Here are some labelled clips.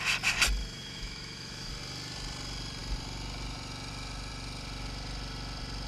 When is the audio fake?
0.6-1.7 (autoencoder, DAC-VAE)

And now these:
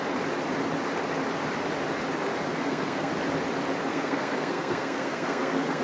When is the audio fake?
2.5-3.1 (codec, SNAC); 3.9-5.8

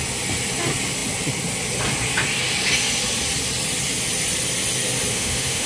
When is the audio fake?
5.1-5.7 (autoencoder, DAC-VAE)

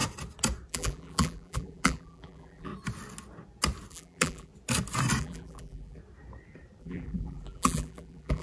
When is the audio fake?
0.7-2.7 (vocoder, BigVGAN v2); 3.9-4.5; 5.2-6.0; 6.8-8.4

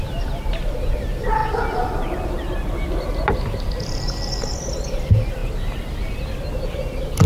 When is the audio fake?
none

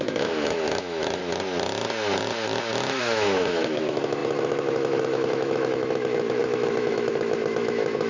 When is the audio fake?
0.0-1.2 (autoencoder, DAC-VAE); 3.0-8.1

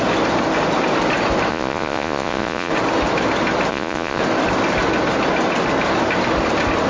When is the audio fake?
1.5-2.7 (vocoder, Vocos); 3.7-4.2